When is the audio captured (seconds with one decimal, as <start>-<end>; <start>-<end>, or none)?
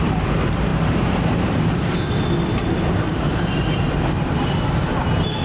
none